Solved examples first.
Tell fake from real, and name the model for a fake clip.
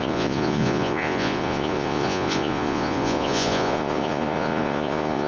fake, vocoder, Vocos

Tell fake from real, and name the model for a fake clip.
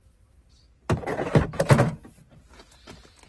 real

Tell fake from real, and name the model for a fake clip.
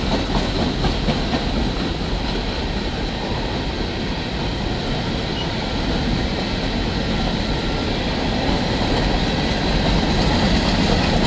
real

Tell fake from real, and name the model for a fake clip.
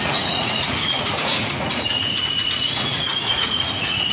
fake, vocoder, Vocos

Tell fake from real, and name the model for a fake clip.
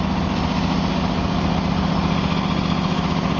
real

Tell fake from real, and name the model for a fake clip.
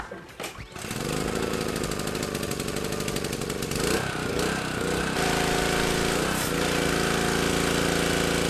real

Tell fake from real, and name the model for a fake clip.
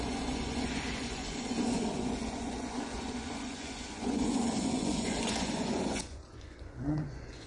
fake, vocoder, Vocos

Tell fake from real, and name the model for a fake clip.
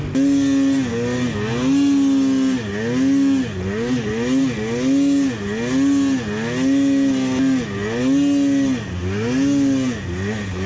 real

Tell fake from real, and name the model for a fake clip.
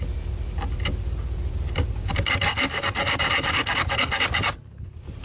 real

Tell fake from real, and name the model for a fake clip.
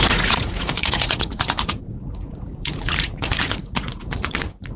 fake, vocoder, Vocos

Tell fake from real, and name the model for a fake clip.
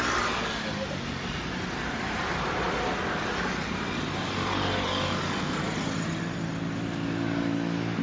real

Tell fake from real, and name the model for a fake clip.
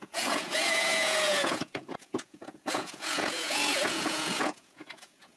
fake, vocoder, Vocos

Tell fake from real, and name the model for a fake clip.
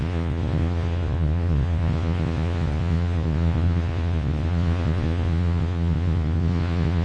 fake, vocoder, Vocos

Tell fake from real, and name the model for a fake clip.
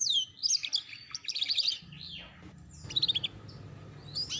real